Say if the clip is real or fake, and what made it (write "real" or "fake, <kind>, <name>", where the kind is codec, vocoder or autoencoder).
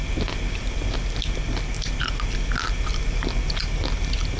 real